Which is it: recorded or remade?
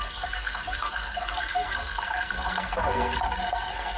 remade